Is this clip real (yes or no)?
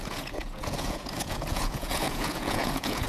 no